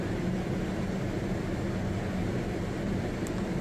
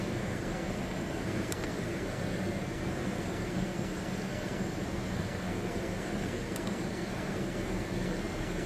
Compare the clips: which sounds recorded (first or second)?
first